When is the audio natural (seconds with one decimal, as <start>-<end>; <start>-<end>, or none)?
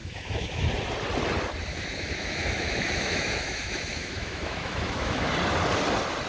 0.7-1.7; 5.3-6.3